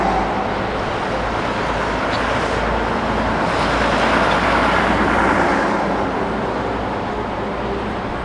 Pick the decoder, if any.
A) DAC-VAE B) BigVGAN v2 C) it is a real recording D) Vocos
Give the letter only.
C